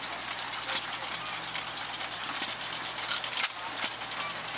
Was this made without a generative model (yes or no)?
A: yes